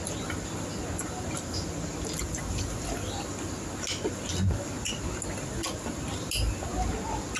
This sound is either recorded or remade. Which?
recorded